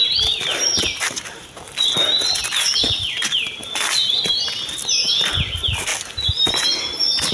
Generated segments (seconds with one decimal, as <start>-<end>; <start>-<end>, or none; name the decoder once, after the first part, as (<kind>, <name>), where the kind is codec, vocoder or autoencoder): none

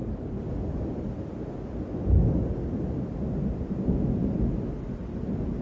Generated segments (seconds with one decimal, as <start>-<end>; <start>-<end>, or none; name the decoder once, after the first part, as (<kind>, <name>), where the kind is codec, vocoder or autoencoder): none

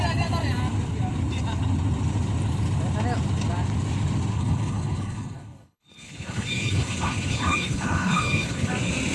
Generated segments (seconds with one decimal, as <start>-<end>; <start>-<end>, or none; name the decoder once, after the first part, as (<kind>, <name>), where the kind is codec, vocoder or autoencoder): 4.3-8.7 (codec, HILCodec)

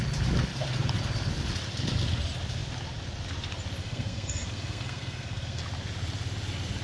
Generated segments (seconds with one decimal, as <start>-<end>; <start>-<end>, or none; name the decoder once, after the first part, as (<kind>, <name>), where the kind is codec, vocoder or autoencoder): 3.8-5.6 (codec, SNAC)